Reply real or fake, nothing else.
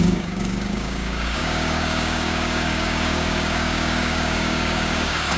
fake